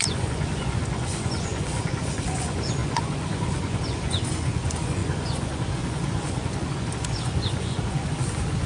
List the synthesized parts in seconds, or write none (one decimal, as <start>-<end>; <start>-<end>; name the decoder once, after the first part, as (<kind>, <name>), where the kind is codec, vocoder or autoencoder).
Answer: 0.0-8.7 (vocoder, Vocos)